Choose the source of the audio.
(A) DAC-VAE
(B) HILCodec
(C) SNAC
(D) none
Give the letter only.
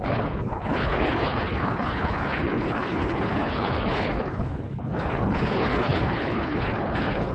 B